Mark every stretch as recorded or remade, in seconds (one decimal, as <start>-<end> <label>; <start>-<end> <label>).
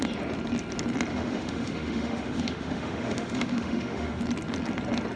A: 0.0-1.1 recorded; 1.1-4.2 remade; 4.2-5.2 recorded